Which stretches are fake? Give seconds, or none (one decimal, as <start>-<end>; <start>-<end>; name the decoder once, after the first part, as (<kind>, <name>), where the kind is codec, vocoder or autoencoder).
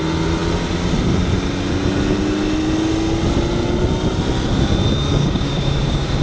5.1-6.2 (codec, DAC)